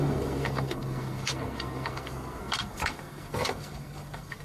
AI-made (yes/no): yes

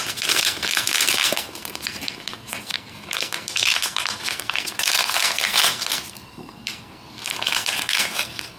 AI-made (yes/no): yes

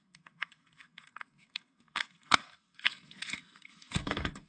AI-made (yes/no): yes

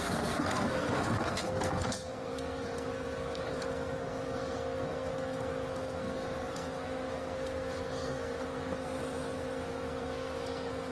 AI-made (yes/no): yes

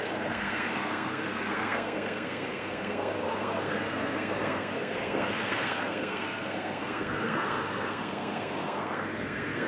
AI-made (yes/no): yes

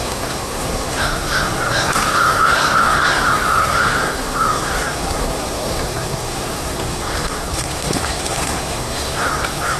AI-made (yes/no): yes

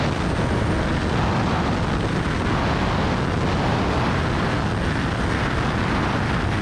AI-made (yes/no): no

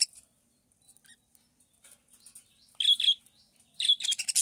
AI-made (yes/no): no